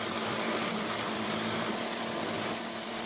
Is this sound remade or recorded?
remade